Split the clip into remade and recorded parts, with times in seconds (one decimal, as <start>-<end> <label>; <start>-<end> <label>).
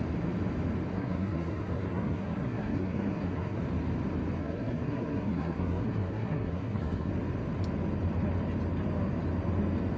0.0-0.9 recorded; 0.9-3.6 remade; 3.6-4.4 recorded; 4.4-7.1 remade; 7.1-10.0 recorded